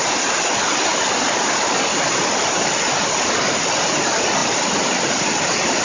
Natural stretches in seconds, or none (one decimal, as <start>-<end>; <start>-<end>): 0.0-4.4; 5.0-5.8